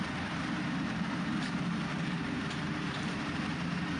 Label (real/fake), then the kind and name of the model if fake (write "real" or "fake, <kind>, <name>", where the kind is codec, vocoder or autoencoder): fake, vocoder, BigVGAN v2